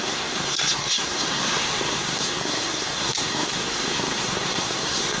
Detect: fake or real fake